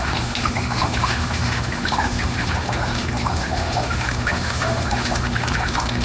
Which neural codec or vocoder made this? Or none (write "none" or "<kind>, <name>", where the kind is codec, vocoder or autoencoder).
autoencoder, DAC-VAE